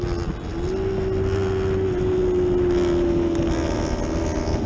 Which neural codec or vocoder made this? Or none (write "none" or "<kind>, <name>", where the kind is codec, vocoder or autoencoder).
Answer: none